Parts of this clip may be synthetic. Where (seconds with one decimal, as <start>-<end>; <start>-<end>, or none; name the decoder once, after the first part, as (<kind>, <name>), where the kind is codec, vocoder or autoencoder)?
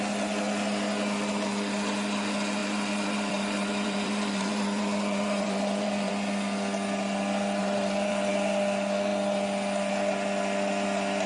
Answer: 2.6-6.1 (vocoder, BigVGAN v2); 7.6-8.3